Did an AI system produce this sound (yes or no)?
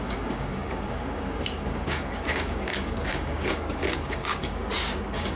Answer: yes